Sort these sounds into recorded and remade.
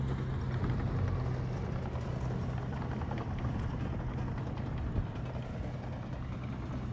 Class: recorded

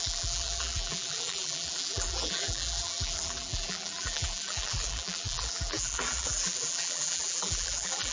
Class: remade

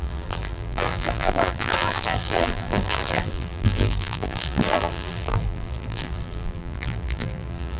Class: remade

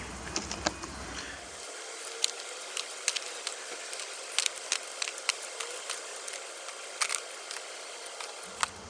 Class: recorded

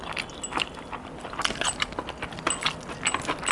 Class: recorded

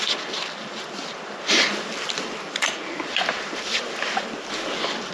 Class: remade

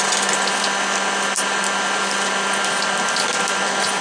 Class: recorded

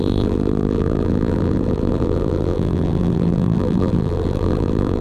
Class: remade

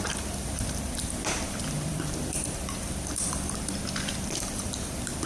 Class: remade